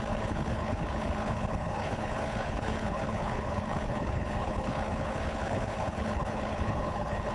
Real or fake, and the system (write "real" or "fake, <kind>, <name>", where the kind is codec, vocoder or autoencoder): fake, codec, HILCodec